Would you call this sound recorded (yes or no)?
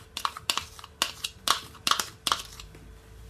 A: yes